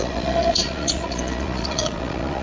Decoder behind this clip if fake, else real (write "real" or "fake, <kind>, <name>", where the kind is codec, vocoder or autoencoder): fake, vocoder, Vocos